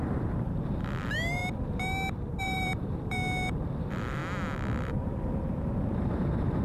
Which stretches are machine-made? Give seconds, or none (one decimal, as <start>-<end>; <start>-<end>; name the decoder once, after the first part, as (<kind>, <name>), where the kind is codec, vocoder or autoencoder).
0.0-1.4 (vocoder, BigVGAN v2); 2.4-4.2; 4.8-6.6